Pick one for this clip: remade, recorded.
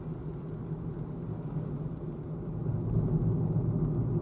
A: recorded